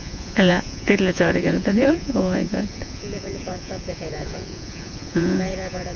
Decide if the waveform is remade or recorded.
remade